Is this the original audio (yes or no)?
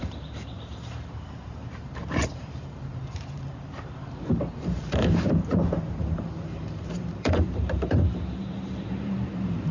no